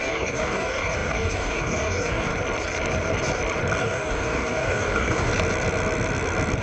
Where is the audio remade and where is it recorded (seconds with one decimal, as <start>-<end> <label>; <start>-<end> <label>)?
0.0-2.3 remade; 2.3-3.8 recorded; 3.8-5.3 remade; 5.3-6.6 recorded